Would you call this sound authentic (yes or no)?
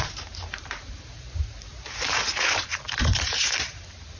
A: no